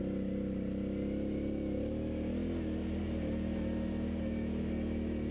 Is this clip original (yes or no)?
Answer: yes